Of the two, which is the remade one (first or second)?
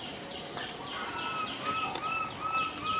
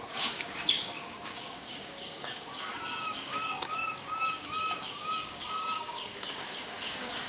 second